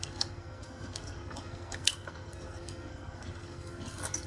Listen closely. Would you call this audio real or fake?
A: fake